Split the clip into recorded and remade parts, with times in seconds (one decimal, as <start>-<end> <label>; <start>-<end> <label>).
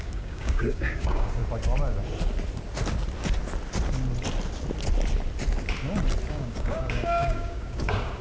0.0-1.4 remade; 1.4-6.3 recorded; 6.3-8.2 remade